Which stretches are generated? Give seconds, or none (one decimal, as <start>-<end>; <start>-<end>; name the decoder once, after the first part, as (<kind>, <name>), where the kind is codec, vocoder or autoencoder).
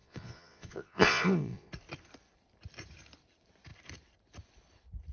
0.0-1.7 (vocoder, Vocos)